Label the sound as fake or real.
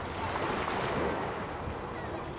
real